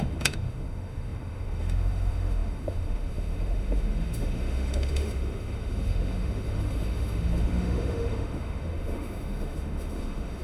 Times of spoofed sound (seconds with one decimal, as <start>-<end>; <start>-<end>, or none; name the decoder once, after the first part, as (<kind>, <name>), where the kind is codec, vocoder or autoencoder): 0.0-10.4 (autoencoder, DAC-VAE)